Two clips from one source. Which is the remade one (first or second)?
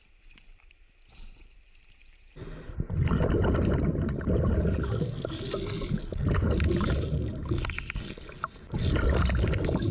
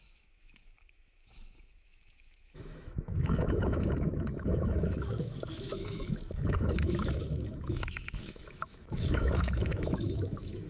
second